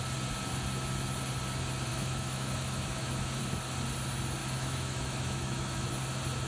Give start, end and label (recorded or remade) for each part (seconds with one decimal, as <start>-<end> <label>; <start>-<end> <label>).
0.0-1.9 recorded; 1.9-3.4 remade; 3.4-4.4 recorded; 4.4-5.9 remade; 5.9-6.5 recorded